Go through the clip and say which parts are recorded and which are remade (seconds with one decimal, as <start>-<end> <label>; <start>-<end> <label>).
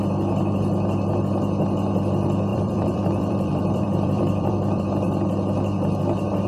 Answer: 0.0-2.5 recorded; 2.5-4.8 remade; 4.8-6.5 recorded